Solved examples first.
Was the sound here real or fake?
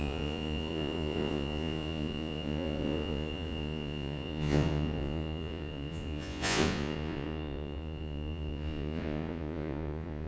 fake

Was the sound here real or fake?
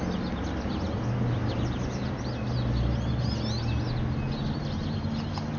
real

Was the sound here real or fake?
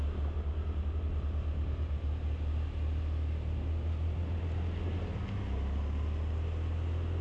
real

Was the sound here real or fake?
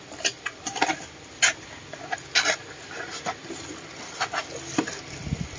real